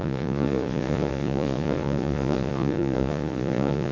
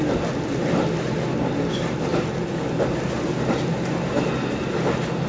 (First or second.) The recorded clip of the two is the second